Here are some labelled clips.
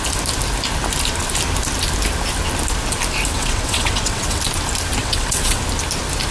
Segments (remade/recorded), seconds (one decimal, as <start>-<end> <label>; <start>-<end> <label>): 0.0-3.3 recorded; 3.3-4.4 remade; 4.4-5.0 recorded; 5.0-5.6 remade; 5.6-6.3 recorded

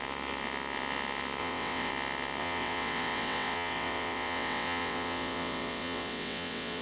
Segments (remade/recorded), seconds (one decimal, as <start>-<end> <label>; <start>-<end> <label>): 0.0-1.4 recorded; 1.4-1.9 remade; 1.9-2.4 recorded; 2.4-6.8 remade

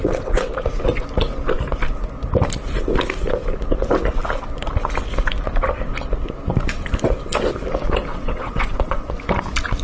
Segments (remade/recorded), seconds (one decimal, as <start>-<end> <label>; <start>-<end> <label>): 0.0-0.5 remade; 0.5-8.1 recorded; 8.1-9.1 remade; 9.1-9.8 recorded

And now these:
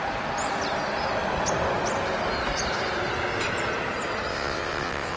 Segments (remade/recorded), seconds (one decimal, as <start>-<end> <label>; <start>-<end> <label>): 0.0-4.3 recorded; 4.3-5.2 remade

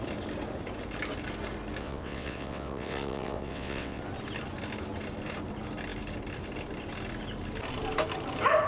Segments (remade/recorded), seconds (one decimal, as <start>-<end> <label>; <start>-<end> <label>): 0.0-1.8 recorded; 1.8-4.0 remade; 4.0-8.7 recorded